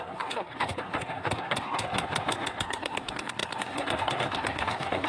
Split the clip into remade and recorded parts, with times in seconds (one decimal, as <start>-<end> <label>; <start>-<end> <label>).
0.0-5.1 remade

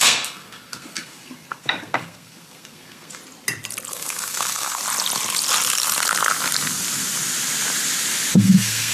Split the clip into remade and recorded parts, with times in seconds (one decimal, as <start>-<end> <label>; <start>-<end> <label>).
0.0-3.2 remade; 3.2-3.9 recorded; 3.9-4.8 remade; 4.8-8.3 recorded; 8.3-8.9 remade

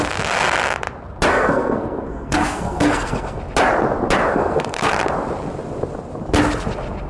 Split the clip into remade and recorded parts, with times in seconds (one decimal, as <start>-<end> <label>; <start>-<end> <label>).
0.0-1.3 recorded; 1.3-3.4 remade; 3.4-4.3 recorded; 4.3-4.9 remade; 4.9-7.1 recorded

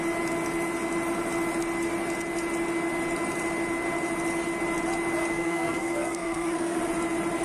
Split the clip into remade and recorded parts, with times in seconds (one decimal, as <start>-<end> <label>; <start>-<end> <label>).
0.0-5.3 recorded; 5.3-6.8 remade; 6.8-7.4 recorded

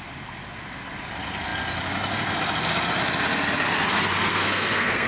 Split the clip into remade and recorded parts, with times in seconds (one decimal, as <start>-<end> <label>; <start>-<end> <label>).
0.0-4.3 recorded; 4.3-5.1 remade

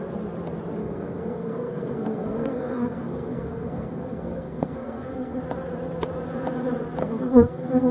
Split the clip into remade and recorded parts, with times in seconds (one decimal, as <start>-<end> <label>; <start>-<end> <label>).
0.0-0.8 recorded; 0.8-5.4 remade; 5.4-7.0 recorded; 7.0-7.9 remade

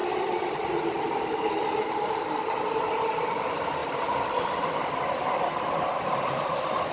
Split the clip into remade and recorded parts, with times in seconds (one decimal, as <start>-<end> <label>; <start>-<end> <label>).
0.0-6.9 recorded

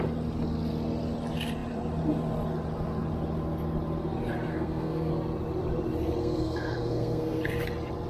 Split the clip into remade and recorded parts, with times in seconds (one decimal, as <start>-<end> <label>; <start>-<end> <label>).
0.0-4.5 recorded; 4.5-5.1 remade; 5.1-6.2 recorded; 6.2-7.4 remade; 7.4-8.1 recorded